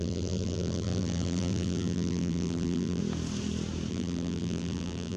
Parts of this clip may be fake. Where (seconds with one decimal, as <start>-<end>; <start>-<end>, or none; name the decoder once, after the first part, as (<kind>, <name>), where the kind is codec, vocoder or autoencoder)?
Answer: 0.0-3.0 (vocoder, BigVGAN v2); 3.9-5.2

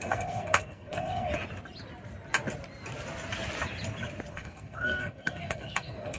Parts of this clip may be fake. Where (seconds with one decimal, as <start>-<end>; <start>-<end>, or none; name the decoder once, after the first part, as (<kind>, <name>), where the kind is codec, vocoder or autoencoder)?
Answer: 0.0-1.3 (codec, SNAC); 4.3-6.2

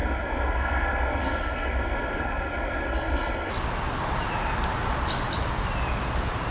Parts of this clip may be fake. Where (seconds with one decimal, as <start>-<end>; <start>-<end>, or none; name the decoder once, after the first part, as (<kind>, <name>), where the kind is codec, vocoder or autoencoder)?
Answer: 0.0-3.5 (codec, SNAC)

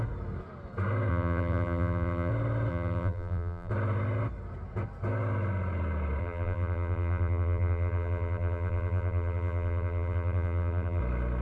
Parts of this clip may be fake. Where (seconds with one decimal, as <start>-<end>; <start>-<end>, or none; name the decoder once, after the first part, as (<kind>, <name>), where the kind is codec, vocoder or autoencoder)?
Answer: 1.1-2.3 (vocoder, BigVGAN v2); 2.7-3.7; 6.2-11.0

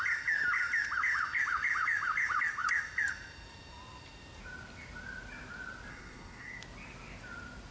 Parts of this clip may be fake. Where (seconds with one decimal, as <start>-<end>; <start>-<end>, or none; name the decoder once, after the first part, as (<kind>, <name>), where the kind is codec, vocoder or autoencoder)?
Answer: 5.9-6.6 (codec, SNAC)

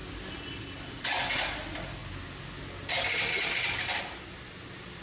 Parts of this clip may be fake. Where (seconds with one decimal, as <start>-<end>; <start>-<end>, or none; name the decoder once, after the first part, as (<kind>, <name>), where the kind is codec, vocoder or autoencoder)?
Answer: 0.0-2.0 (vocoder, BigVGAN v2); 2.9-5.0

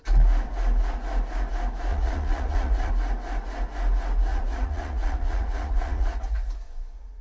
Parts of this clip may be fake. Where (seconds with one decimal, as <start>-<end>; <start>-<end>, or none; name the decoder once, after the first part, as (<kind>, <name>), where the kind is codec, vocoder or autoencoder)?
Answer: 1.9-2.9 (vocoder, Vocos); 4.3-7.2